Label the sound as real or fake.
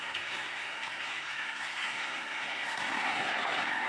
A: fake